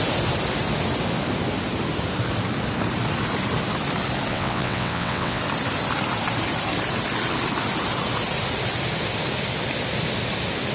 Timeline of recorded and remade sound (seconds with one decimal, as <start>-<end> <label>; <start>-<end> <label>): 0.0-4.3 recorded; 4.3-5.4 remade; 5.4-10.7 recorded